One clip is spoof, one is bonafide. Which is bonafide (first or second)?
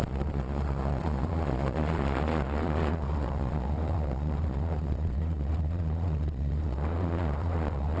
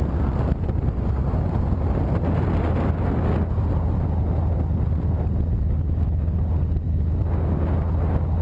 second